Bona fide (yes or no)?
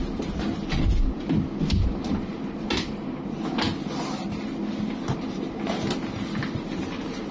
yes